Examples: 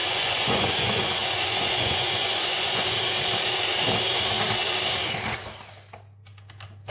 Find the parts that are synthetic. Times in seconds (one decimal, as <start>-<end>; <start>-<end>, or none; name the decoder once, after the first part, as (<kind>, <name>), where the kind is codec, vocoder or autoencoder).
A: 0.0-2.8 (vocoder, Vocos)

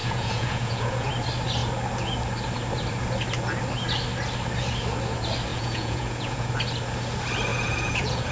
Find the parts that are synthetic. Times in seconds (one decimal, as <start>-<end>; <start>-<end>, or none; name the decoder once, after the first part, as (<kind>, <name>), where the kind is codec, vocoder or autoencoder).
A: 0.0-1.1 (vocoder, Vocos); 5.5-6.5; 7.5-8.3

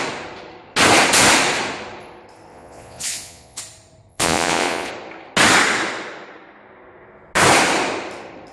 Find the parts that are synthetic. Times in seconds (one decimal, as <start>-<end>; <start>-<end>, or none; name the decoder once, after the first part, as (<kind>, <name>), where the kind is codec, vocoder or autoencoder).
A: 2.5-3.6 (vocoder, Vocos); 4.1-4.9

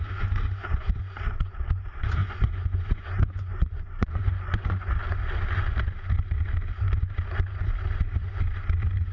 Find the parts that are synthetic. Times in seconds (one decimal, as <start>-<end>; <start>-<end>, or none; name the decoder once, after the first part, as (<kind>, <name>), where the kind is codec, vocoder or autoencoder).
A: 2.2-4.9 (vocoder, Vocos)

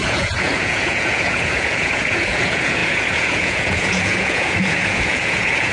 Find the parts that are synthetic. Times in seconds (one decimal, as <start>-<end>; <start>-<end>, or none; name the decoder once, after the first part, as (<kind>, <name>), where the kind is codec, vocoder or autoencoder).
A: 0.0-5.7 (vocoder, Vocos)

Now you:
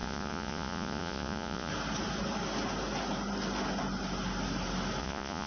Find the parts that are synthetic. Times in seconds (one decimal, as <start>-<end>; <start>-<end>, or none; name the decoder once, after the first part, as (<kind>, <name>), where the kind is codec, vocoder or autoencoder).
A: 0.0-1.7 (vocoder, Vocos); 5.0-5.5

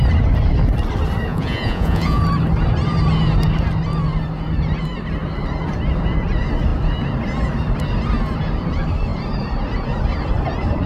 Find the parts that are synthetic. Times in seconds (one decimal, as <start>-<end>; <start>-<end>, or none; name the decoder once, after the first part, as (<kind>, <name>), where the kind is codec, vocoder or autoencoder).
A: 1.3-2.2 (vocoder, Vocos)

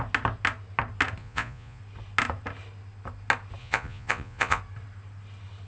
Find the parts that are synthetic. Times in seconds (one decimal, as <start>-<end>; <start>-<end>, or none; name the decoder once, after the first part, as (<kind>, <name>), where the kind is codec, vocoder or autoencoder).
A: 1.2-1.8 (vocoder, Vocos); 3.6-4.6